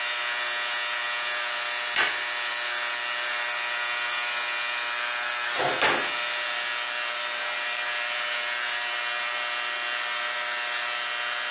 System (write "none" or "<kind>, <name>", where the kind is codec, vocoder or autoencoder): none